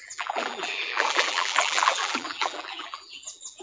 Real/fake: fake